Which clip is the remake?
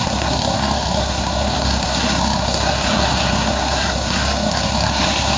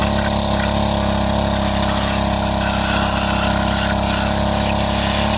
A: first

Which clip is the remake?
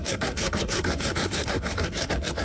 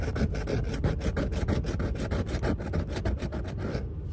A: first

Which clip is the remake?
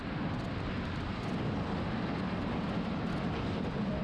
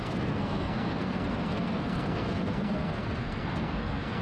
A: second